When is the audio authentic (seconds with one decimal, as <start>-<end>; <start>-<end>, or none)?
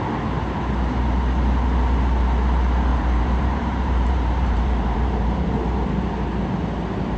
0.0-2.9; 5.9-7.2